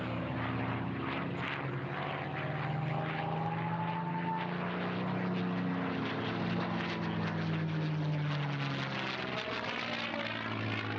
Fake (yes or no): no